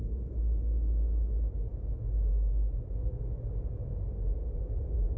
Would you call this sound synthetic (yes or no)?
no